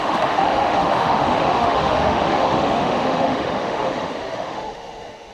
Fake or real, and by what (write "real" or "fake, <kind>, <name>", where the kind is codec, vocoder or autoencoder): fake, autoencoder, DAC-VAE